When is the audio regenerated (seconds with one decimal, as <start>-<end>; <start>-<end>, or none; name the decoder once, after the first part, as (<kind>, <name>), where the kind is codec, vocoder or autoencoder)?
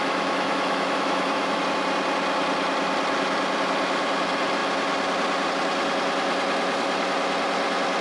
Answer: 0.0-1.6 (autoencoder, DAC-VAE)